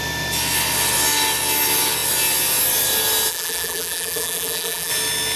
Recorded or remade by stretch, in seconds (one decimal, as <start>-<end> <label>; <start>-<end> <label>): 0.0-3.3 recorded; 3.3-4.9 remade; 4.9-5.4 recorded